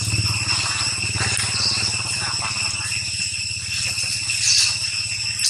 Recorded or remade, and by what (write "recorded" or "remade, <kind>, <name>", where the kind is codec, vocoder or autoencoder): recorded